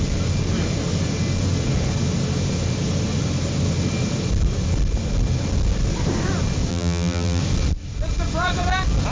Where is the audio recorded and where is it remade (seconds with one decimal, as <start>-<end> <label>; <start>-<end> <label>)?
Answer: 0.0-6.7 recorded; 6.7-7.4 remade; 7.4-9.1 recorded